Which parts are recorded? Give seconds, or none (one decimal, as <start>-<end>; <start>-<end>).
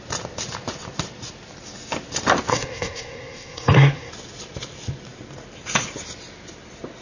0.0-2.5; 4.1-7.0